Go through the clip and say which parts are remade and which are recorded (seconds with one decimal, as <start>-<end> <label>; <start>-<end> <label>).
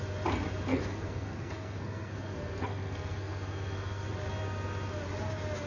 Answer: 0.0-0.7 recorded; 0.7-4.1 remade; 4.1-5.7 recorded